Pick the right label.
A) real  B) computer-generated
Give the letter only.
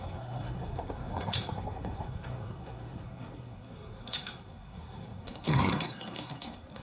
B